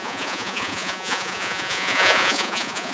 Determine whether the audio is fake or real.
fake